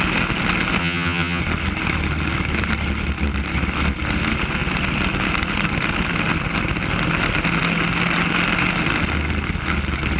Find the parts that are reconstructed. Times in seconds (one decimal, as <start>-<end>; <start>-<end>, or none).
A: 0.8-1.4